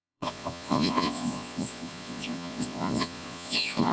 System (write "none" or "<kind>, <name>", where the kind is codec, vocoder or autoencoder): vocoder, Vocos